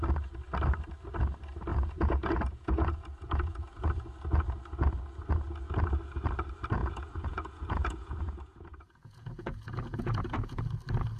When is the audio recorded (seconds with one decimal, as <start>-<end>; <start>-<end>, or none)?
0.0-1.7; 3.9-6.8; 10.6-11.2